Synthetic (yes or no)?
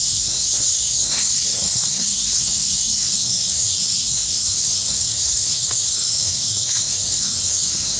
yes